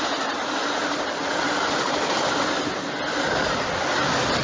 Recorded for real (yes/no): yes